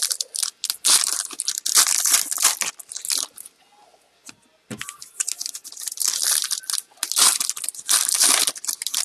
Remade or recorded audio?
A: recorded